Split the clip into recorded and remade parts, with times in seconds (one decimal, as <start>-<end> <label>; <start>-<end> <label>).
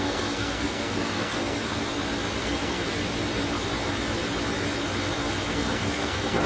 0.0-1.8 remade; 1.8-2.4 recorded; 2.4-2.8 remade; 2.8-5.5 recorded; 5.5-6.5 remade